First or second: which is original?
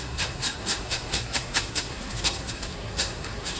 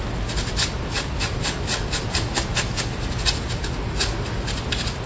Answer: second